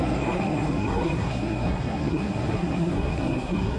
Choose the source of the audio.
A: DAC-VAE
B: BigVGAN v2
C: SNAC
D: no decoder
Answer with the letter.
C